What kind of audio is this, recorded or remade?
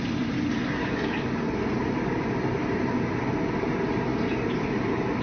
recorded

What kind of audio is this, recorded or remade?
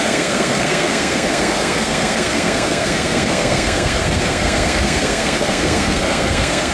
remade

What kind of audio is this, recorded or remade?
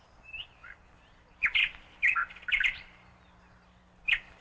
remade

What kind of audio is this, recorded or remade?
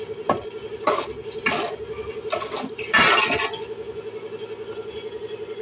recorded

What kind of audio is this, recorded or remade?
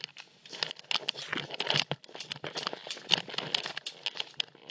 recorded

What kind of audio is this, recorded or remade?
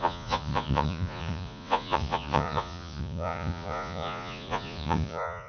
remade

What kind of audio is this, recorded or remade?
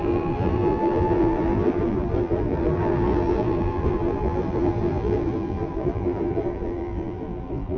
remade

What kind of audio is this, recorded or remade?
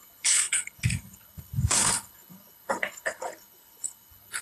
remade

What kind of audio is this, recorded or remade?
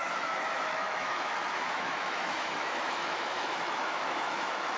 remade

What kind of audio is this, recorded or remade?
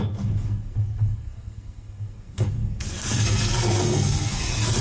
remade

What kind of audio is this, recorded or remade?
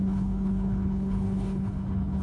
remade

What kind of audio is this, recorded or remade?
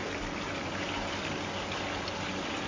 recorded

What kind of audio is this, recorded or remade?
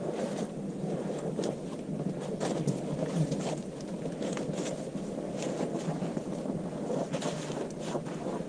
recorded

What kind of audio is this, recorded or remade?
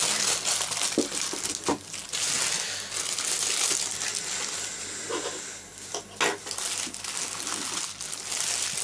recorded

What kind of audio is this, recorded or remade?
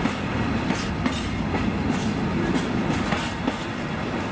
recorded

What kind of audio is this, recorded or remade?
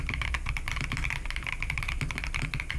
recorded